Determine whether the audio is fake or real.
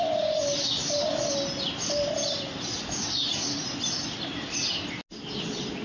real